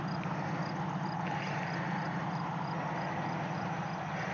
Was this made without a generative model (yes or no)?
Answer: yes